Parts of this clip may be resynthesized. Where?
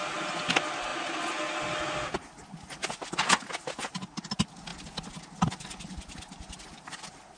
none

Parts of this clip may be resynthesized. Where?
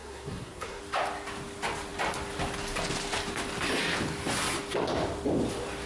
0.0-0.8 (codec, SNAC)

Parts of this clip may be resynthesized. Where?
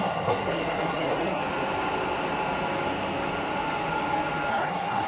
0.0-1.4 (codec, SNAC); 4.5-5.1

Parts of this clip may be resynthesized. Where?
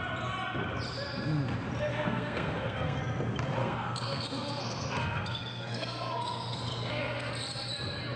1.9-3.0 (codec, SNAC); 3.6-7.3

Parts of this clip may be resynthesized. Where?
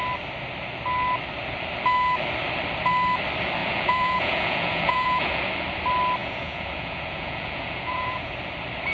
3.6-5.4 (vocoder, Vocos); 6.2-8.3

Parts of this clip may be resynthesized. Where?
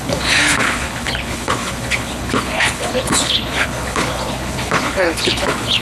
0.0-5.8 (codec, HILCodec)